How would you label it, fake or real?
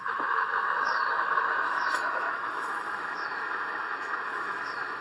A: fake